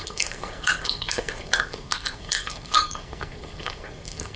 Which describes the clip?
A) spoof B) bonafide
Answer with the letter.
A